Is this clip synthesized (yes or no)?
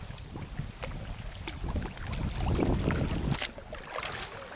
no